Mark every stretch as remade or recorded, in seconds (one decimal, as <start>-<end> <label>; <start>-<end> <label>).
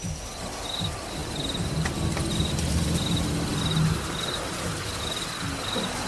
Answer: 0.0-6.1 recorded